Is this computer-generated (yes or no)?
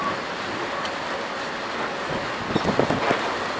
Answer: no